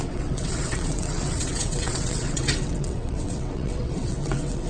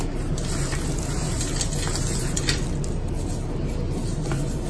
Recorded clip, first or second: second